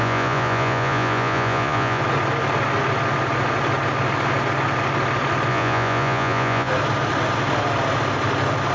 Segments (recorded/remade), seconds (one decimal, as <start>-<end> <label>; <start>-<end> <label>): 0.0-2.0 remade; 2.0-5.5 recorded; 5.5-6.7 remade; 6.7-8.7 recorded